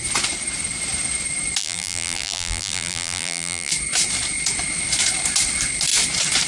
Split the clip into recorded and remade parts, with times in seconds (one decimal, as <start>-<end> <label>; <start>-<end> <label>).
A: 0.0-1.6 recorded; 1.6-3.7 remade; 3.7-6.5 recorded